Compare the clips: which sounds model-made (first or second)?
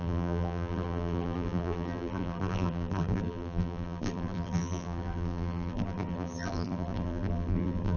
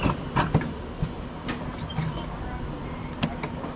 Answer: first